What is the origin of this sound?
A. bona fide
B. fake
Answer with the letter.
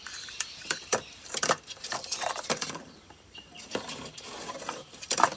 B